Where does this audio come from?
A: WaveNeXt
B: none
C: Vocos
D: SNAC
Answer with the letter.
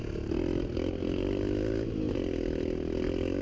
B